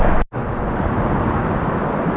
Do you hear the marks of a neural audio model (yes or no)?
no